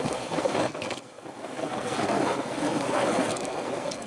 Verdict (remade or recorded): remade